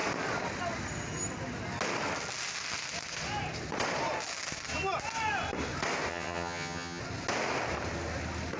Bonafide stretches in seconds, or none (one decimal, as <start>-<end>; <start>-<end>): 0.0-6.1; 7.0-8.6